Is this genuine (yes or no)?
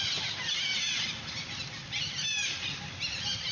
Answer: yes